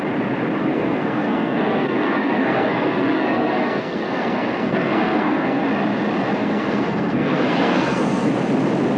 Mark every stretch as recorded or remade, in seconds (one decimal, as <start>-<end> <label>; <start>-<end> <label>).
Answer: 0.0-0.6 recorded; 0.6-5.6 remade; 5.6-6.4 recorded; 6.4-8.3 remade; 8.3-9.0 recorded